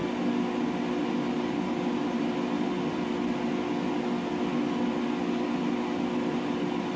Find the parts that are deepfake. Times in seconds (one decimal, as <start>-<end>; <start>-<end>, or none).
none